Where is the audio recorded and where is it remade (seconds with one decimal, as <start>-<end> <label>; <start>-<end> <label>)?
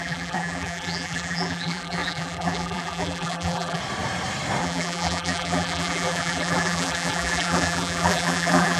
0.0-3.8 remade; 3.8-4.6 recorded; 4.6-8.8 remade